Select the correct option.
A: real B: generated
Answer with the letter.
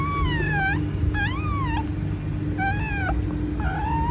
A